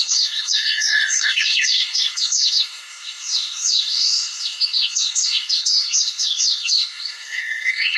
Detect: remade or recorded remade